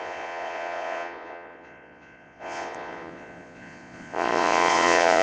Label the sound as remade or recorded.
remade